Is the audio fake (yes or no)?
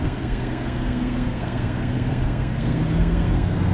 yes